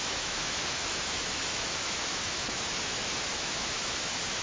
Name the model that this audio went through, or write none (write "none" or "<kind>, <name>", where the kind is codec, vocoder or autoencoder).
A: autoencoder, DAC-VAE